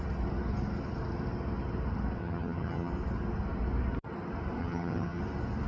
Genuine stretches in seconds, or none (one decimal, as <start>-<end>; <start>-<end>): 0.0-2.2; 2.9-4.6; 5.2-5.7